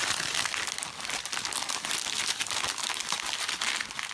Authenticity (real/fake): real